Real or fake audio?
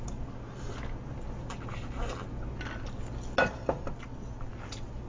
real